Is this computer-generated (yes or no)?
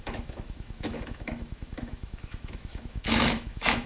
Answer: yes